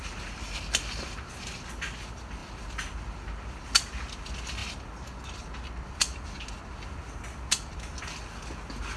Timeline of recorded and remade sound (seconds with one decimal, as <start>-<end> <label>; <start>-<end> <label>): 0.0-9.0 recorded